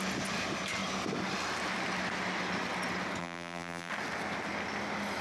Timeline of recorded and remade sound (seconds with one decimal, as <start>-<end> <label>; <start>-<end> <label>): 0.0-3.2 recorded; 3.2-3.9 remade; 3.9-5.2 recorded